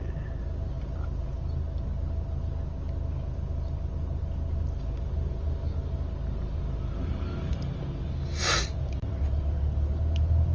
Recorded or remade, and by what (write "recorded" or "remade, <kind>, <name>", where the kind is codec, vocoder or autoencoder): recorded